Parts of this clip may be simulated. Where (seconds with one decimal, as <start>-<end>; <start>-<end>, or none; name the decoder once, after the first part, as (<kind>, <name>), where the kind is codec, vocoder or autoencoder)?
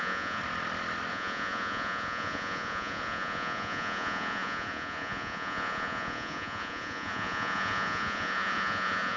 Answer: 0.0-0.4 (vocoder, Vocos); 1.1-9.2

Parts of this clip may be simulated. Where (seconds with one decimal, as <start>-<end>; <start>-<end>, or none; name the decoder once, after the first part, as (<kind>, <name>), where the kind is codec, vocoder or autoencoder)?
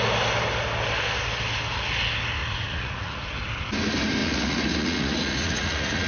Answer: 2.4-3.2 (vocoder, Vocos); 4.2-6.1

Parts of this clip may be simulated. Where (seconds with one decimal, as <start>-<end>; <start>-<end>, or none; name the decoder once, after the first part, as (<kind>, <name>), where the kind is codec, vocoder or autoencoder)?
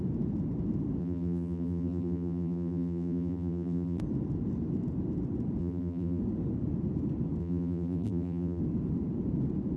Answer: 1.0-4.0 (vocoder, BigVGAN v2); 5.6-6.2; 7.4-8.6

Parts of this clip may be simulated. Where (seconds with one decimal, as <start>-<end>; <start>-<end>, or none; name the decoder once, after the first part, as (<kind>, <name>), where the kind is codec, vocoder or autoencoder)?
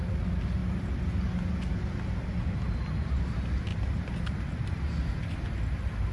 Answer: 3.7-5.6 (vocoder, BigVGAN v2)